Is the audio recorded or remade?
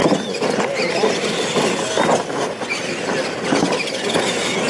recorded